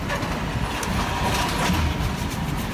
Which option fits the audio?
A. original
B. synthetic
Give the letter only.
A